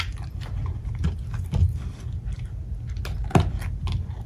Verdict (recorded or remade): recorded